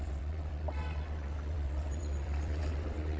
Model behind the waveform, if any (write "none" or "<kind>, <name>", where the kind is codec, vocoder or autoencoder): vocoder, WaveNeXt